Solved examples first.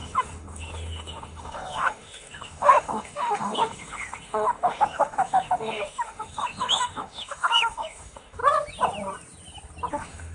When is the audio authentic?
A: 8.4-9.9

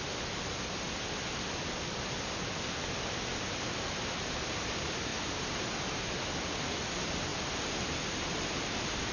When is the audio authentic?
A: 0.0-5.1; 6.2-9.1

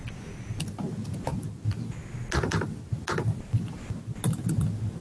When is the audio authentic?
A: 0.0-5.0

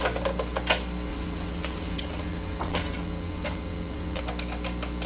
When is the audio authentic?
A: 0.0-1.1; 4.2-5.1

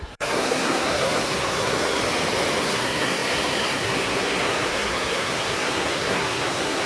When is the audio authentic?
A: 2.0-2.6